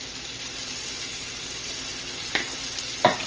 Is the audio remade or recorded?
recorded